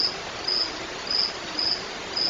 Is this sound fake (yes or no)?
no